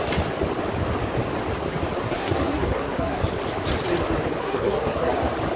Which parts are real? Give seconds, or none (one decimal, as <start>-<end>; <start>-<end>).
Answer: 0.0-2.0; 3.2-4.4; 5.1-5.6